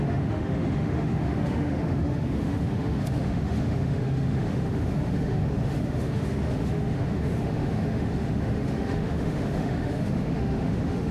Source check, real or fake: fake